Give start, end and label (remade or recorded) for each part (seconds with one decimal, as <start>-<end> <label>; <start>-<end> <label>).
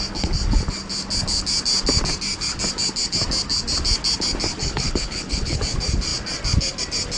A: 0.0-4.6 recorded; 4.6-5.6 remade; 5.6-7.2 recorded